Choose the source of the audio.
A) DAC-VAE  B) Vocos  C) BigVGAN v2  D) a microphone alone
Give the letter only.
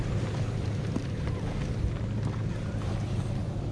D